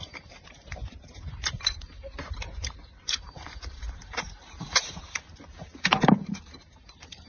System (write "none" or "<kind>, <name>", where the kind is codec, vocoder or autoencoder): vocoder, BigVGAN v2